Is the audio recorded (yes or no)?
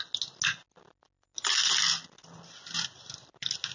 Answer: yes